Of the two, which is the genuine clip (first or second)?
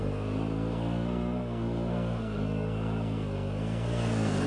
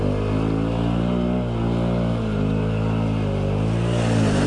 second